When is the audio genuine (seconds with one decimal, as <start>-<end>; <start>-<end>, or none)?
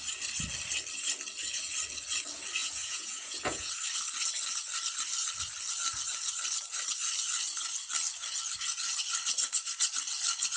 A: 0.0-2.6; 3.7-10.6